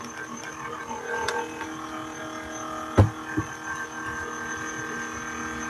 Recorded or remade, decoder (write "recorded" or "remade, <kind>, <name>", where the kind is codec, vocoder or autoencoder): recorded